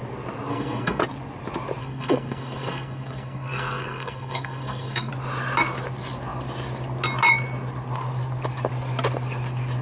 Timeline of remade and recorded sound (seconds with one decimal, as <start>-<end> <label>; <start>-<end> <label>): 0.0-0.5 recorded; 0.5-1.0 remade; 1.0-1.8 recorded; 1.8-5.1 remade; 5.1-9.8 recorded